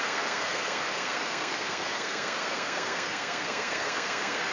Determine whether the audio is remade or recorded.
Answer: remade